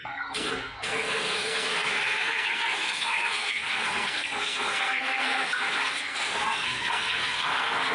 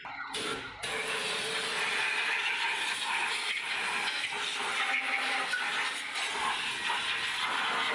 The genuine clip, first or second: second